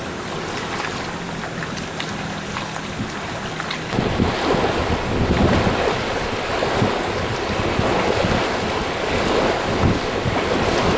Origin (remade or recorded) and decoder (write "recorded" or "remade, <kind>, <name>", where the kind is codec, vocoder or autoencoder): recorded